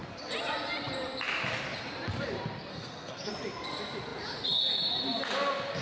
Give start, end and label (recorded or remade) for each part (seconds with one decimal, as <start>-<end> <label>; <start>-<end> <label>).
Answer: 0.0-2.7 recorded; 2.7-3.3 remade; 3.3-5.8 recorded